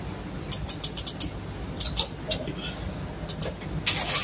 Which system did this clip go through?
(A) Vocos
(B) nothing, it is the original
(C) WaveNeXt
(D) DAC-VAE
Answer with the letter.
B